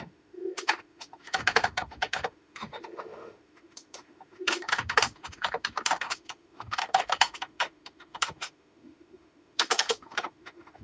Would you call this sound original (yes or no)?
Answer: no